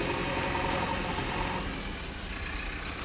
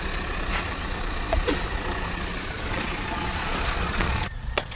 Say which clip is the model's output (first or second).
second